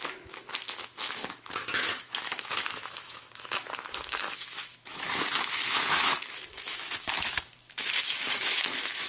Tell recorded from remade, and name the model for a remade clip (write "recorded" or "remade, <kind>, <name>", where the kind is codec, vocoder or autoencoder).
remade, autoencoder, DAC-VAE